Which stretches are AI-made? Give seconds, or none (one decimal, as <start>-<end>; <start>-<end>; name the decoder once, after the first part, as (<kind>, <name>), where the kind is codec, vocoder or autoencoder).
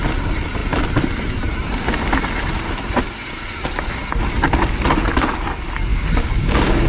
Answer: 5.9-6.9 (codec, DAC)